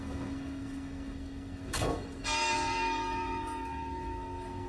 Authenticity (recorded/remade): remade